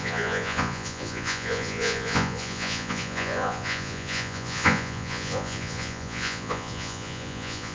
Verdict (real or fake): fake